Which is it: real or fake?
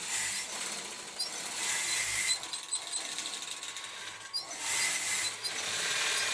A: real